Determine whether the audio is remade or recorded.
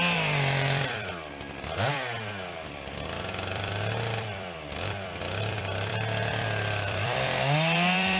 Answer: remade